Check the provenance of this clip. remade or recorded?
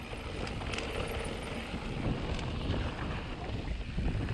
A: recorded